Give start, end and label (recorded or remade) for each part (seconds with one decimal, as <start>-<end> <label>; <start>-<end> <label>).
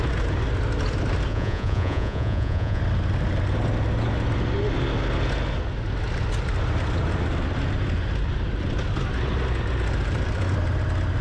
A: 0.0-1.3 recorded; 1.3-2.8 remade; 2.8-11.2 recorded